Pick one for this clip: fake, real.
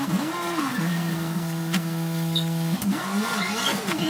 fake